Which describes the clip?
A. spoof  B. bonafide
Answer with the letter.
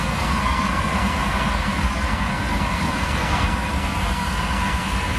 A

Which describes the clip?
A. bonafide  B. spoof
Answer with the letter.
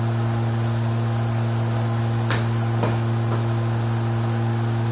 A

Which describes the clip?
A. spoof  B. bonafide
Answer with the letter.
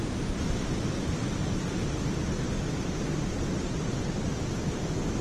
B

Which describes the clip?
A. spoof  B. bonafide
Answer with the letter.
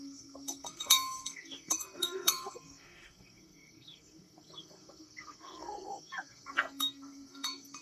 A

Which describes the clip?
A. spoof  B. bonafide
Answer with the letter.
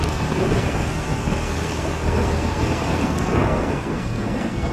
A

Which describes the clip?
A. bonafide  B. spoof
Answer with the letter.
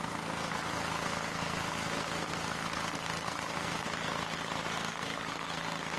B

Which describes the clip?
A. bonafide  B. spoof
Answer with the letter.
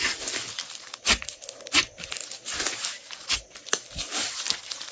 A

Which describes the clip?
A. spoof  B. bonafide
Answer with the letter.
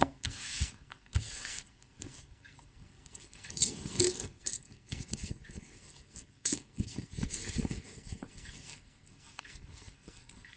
A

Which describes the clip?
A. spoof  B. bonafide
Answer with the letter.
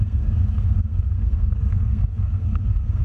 A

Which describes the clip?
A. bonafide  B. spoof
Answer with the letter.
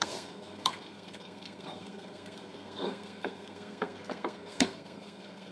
B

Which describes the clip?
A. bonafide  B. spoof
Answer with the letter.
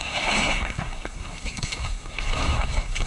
B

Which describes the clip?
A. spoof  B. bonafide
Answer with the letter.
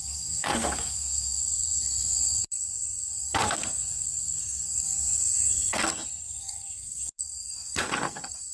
A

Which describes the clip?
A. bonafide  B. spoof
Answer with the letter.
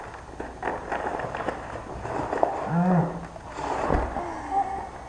A